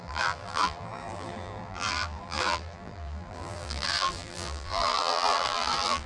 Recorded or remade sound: remade